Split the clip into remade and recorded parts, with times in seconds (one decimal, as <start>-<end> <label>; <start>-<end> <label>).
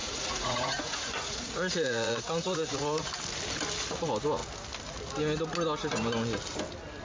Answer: 0.0-3.1 remade; 3.1-7.0 recorded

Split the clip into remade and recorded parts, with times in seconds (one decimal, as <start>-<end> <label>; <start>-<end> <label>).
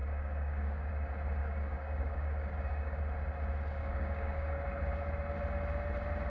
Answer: 0.0-0.9 remade; 0.9-1.4 recorded; 1.4-3.0 remade; 3.0-3.8 recorded; 3.8-4.6 remade; 4.6-6.3 recorded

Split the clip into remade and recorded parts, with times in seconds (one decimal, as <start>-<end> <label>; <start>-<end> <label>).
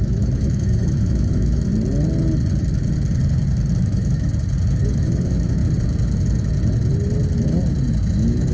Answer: 0.0-1.7 remade; 1.7-3.8 recorded; 3.8-4.3 remade; 4.3-4.8 recorded; 4.8-5.6 remade; 5.6-8.1 recorded; 8.1-8.5 remade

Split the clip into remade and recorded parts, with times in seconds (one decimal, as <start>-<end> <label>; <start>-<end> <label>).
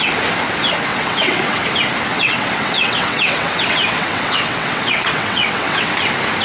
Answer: 0.0-0.9 recorded; 0.9-1.6 remade; 1.6-2.1 recorded; 2.1-5.9 remade; 5.9-6.4 recorded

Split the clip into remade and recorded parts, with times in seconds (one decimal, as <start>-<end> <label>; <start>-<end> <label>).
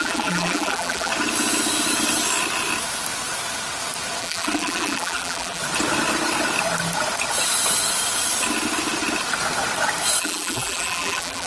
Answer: 0.0-1.1 remade; 1.1-4.2 recorded; 4.2-5.6 remade; 5.6-10.2 recorded; 10.2-11.5 remade